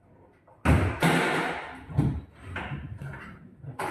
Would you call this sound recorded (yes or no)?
yes